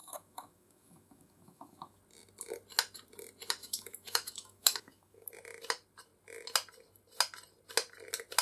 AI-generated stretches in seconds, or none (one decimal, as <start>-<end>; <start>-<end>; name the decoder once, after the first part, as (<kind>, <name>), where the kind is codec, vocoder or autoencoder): 0.0-2.0 (autoencoder, DAC-VAE); 3.6-5.3